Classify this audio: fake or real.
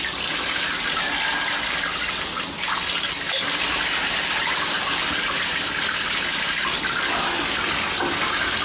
real